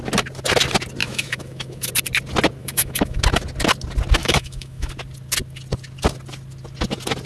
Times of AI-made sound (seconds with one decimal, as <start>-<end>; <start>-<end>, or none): 1.0-1.9; 2.6-3.2; 4.2-4.9

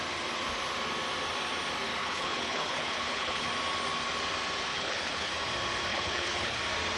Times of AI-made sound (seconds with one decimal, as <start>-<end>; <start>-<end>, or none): 2.0-3.5; 4.7-5.3; 5.9-6.6

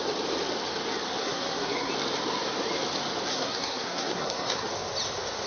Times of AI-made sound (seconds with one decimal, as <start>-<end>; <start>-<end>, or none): 1.2-1.9; 3.3-4.7

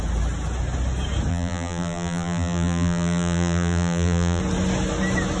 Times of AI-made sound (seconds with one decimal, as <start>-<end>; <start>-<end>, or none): 1.3-4.4

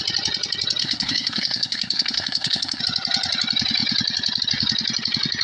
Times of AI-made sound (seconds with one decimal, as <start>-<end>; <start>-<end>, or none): 0.8-2.8

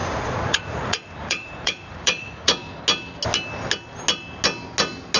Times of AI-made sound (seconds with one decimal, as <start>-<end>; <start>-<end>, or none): 0.0-2.8